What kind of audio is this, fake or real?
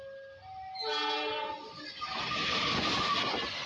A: real